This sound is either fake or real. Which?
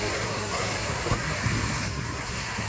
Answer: fake